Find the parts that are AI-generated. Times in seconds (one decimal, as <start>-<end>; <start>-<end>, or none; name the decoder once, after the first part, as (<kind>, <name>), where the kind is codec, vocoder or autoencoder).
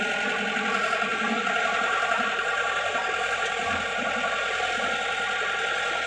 1.1-4.3 (vocoder, BigVGAN v2)